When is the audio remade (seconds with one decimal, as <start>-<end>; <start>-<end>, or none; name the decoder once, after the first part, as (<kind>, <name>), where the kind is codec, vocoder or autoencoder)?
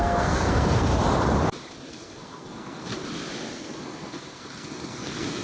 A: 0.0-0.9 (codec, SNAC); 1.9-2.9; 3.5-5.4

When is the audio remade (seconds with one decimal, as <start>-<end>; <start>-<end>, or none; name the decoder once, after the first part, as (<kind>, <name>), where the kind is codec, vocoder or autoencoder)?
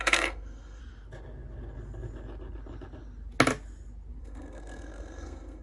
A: 0.0-0.8 (codec, SNAC); 4.2-5.6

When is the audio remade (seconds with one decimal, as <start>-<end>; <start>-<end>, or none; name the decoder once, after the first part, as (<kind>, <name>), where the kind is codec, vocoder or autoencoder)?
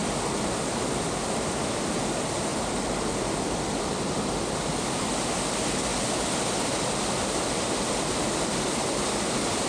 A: none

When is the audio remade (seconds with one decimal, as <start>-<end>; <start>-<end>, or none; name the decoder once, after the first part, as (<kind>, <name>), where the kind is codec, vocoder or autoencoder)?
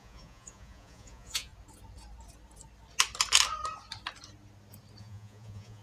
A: 0.0-1.5 (vocoder, Vocos); 5.0-5.8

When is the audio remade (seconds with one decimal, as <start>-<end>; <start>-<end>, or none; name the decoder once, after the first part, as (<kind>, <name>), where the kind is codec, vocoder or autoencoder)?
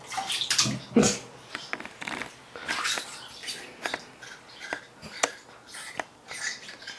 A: none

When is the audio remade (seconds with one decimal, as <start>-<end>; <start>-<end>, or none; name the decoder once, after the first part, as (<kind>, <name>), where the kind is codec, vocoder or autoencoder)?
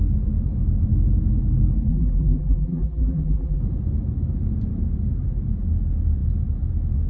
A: 1.9-3.6 (vocoder, BigVGAN v2)